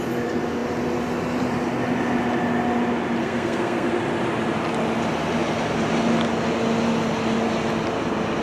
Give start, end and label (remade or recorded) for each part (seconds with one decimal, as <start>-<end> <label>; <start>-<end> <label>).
0.0-3.2 recorded; 3.2-3.9 remade; 3.9-8.4 recorded